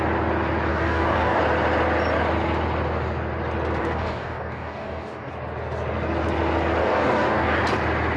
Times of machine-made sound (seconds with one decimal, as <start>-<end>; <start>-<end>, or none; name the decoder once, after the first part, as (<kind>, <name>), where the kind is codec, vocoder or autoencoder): 0.7-1.4 (codec, DAC); 3.8-5.3; 6.8-7.6